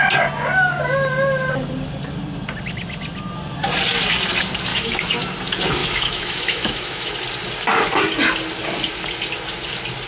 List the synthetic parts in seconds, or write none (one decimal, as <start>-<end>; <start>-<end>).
4.7-5.2; 5.8-7.1